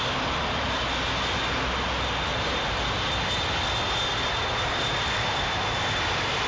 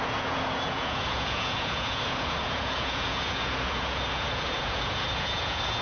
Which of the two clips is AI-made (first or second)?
second